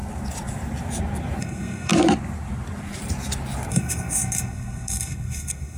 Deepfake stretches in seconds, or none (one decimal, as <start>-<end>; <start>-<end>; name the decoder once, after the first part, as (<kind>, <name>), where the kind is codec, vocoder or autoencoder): 1.4-1.9 (codec, SNAC); 3.7-5.8